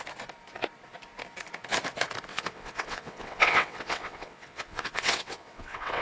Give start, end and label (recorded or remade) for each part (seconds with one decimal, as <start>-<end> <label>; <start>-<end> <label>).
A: 0.0-2.3 recorded; 2.3-6.0 remade